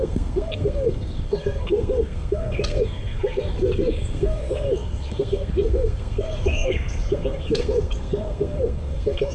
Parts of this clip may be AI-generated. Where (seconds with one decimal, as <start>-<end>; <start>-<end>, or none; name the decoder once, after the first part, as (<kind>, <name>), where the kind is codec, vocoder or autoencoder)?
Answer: 0.0-9.3 (codec, SNAC)